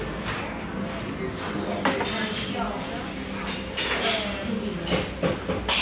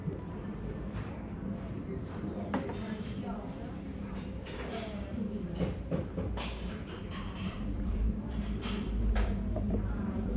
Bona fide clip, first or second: first